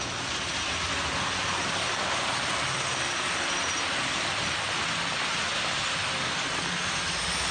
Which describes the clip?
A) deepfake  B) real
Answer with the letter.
B